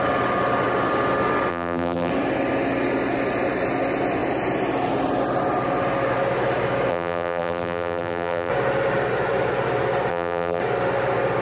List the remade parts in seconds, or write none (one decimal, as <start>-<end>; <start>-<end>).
1.5-2.1; 6.9-8.5; 10.1-10.6